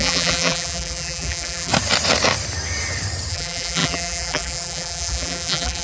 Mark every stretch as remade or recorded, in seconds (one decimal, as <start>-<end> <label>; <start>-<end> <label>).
0.0-1.7 remade; 1.7-3.3 recorded; 3.3-5.8 remade